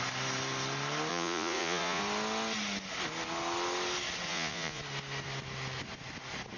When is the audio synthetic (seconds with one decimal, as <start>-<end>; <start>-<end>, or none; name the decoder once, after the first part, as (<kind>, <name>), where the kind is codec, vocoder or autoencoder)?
1.1-2.0 (vocoder, Vocos); 4.3-4.8